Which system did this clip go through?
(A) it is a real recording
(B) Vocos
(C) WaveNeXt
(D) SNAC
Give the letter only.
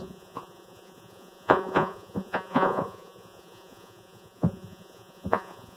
B